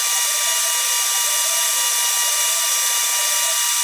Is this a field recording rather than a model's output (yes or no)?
yes